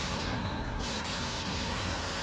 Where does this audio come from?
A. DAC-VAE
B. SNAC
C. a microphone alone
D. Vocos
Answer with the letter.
B